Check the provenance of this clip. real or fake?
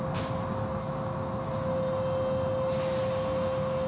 real